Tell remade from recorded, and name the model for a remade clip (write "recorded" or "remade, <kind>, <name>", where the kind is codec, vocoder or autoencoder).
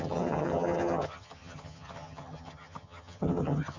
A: remade, vocoder, HiFi-GAN